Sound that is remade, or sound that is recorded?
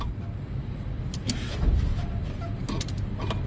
recorded